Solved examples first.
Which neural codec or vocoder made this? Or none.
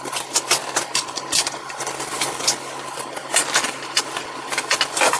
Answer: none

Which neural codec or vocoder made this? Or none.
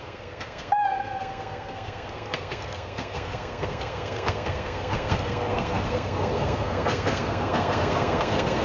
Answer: codec, SNAC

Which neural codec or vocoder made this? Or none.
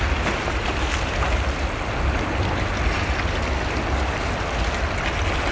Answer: none